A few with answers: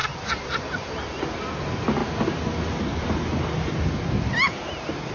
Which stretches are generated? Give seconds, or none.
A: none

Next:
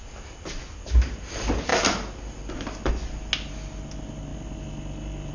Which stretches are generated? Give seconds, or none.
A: none

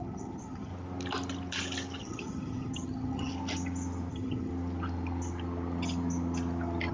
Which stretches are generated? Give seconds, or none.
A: 0.0-0.7 (vocoder, HiFi-GAN); 2.0-3.3; 4.1-4.5

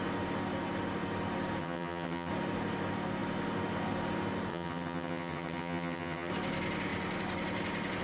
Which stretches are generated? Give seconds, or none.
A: 1.6-2.3 (vocoder, HiFi-GAN); 4.5-6.3

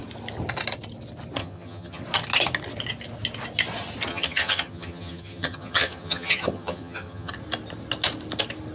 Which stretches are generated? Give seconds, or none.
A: 1.4-2.0 (vocoder, HiFi-GAN); 4.1-7.3

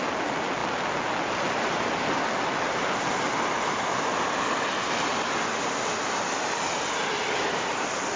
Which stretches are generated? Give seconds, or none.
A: none

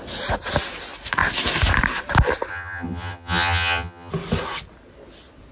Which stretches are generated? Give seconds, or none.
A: 2.5-4.1 (vocoder, HiFi-GAN)